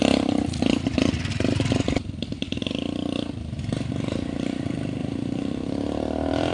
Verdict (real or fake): fake